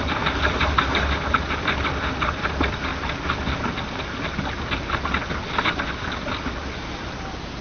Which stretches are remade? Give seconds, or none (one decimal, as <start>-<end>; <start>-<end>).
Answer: none